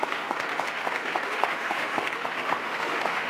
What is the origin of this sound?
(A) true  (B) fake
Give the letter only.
B